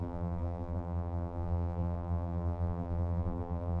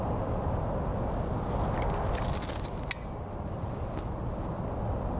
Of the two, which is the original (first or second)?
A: second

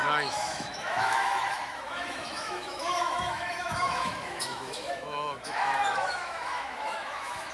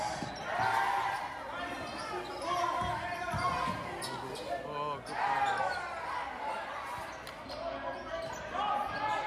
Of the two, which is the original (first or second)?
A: second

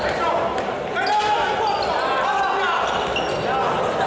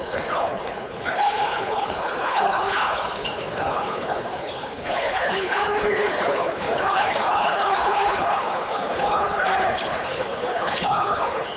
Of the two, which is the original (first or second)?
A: first